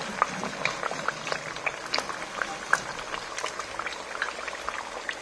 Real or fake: real